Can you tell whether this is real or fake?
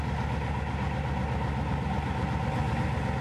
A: real